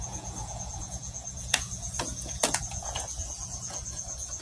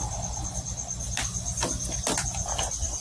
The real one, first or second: second